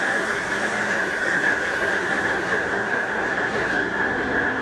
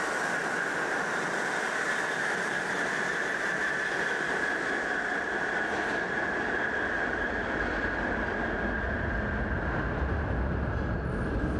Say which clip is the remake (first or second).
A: first